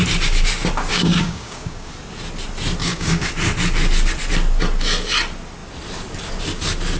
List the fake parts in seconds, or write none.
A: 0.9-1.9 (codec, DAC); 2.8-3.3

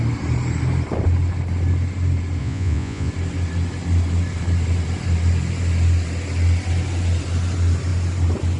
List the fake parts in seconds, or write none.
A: 2.4-3.1 (vocoder, Vocos)